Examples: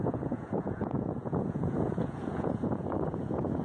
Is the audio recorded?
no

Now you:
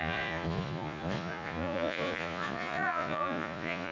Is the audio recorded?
no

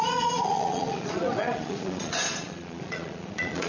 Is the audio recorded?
no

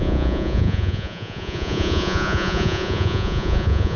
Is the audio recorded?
no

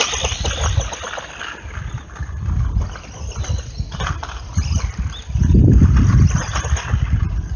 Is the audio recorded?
yes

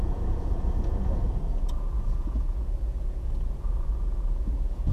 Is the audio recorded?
no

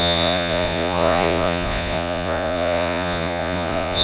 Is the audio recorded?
no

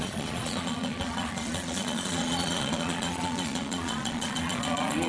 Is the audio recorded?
no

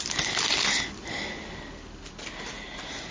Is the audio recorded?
yes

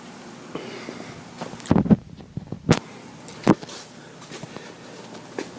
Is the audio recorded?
yes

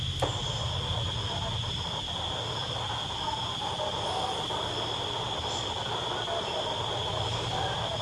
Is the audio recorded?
yes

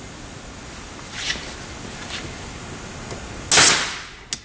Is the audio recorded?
yes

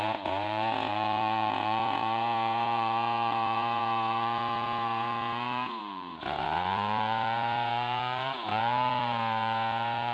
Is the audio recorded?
no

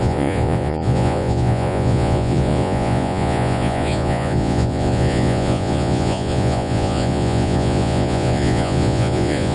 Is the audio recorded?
no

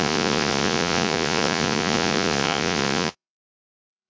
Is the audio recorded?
no